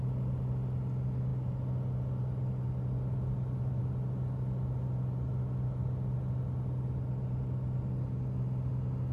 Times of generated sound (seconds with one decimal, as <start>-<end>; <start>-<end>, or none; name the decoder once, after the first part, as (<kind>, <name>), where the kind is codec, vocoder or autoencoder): none